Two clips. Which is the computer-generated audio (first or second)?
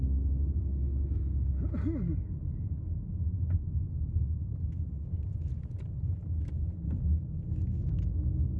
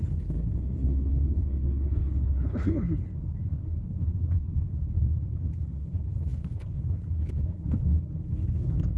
second